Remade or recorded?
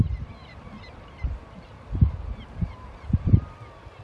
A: remade